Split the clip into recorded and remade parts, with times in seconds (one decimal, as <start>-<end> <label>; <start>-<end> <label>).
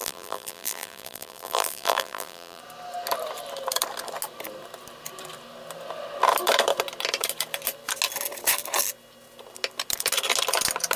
0.0-2.6 remade; 2.6-11.0 recorded